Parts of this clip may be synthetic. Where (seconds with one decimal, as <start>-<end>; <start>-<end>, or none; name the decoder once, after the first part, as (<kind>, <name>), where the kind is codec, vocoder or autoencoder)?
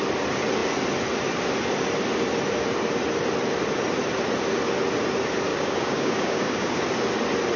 5.5-6.8 (codec, DAC)